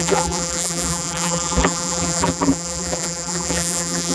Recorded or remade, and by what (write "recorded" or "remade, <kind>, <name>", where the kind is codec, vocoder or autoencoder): remade, vocoder, BigVGAN v2